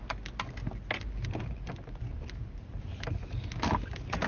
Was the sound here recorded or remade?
recorded